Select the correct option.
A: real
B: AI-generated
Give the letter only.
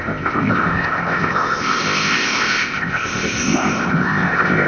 B